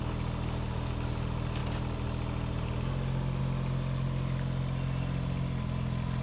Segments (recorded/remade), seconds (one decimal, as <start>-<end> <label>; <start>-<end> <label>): 0.0-6.2 recorded